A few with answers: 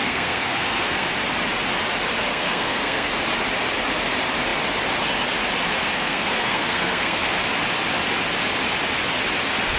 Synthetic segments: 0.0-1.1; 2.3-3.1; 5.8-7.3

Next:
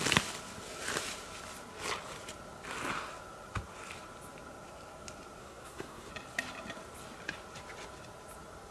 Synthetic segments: 5.4-6.1

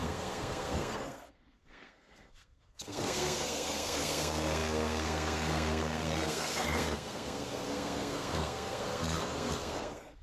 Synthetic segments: 0.0-10.2

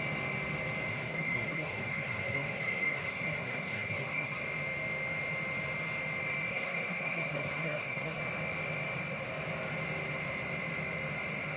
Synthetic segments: 0.9-4.4; 6.5-8.2

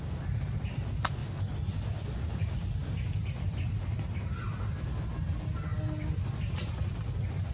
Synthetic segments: none

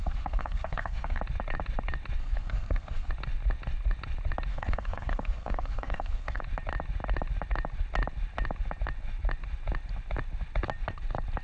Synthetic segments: 0.0-1.2; 2.2-3.1; 4.5-6.4

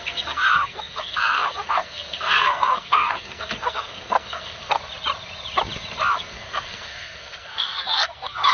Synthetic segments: 0.0-4.8; 6.1-8.5

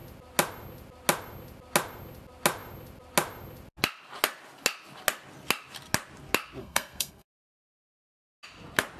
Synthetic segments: 6.6-7.3